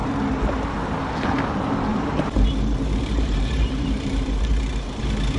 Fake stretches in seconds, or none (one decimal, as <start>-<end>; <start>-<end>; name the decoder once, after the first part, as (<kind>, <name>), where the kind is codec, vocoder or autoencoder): 1.9-4.4 (vocoder, BigVGAN v2)